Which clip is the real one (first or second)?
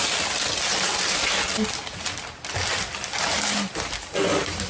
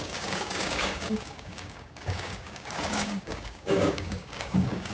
first